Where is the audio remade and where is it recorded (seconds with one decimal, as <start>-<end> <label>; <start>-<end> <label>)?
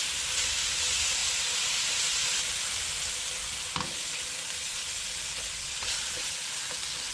0.0-5.6 recorded; 5.6-6.3 remade; 6.3-7.1 recorded